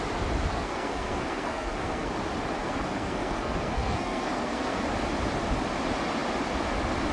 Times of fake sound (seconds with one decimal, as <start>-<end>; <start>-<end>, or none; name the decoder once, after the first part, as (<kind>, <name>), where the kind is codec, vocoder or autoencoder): 0.5-2.1 (codec, SNAC); 2.6-4.9